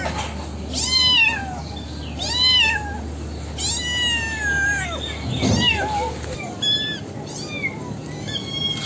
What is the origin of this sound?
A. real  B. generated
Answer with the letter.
A